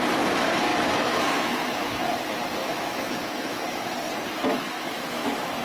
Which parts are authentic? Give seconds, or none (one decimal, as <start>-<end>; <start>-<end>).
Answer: 0.0-0.7; 2.0-2.6; 3.6-4.5